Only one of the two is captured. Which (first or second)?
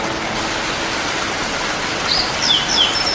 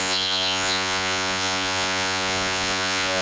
first